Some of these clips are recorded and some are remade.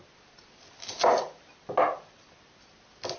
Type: recorded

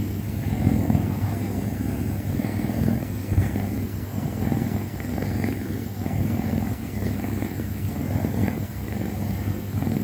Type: remade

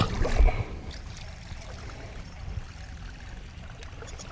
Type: recorded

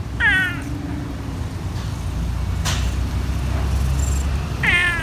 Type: recorded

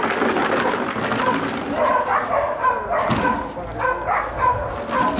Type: recorded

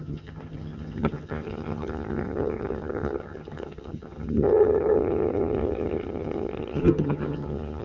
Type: remade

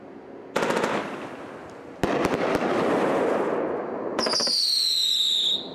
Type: recorded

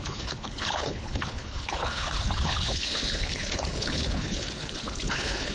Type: remade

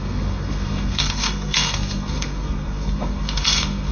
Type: remade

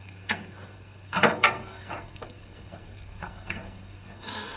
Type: remade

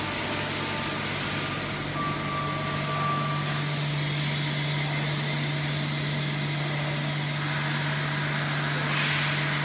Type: recorded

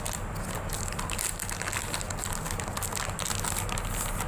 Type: recorded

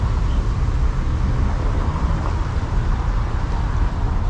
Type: remade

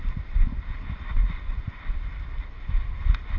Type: recorded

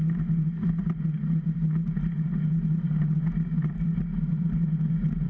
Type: recorded